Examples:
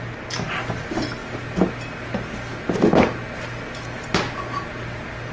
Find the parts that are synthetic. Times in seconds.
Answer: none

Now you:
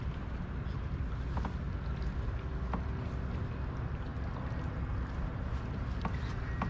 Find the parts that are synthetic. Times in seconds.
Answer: none